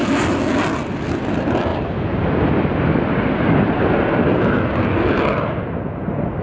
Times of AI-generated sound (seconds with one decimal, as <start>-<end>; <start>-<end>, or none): none